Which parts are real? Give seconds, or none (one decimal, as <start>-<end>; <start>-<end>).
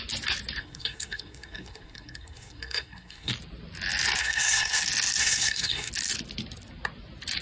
0.0-0.6; 3.3-4.2; 4.8-5.2; 5.9-7.4